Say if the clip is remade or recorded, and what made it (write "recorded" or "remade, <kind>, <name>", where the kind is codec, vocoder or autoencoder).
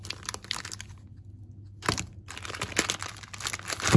recorded